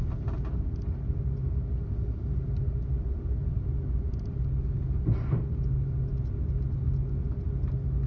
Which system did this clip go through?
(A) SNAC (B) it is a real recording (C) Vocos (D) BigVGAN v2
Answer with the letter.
B